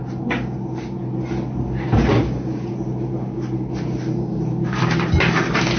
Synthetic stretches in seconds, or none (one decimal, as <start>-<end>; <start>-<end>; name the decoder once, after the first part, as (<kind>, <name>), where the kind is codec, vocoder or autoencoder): none

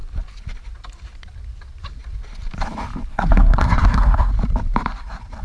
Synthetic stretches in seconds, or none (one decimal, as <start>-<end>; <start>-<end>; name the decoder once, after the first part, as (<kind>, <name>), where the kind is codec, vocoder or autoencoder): 3.1-4.3 (codec, SNAC)

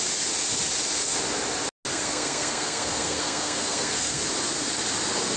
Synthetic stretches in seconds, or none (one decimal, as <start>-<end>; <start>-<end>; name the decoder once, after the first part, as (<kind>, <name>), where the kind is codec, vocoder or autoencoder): 1.9-4.2 (codec, SNAC)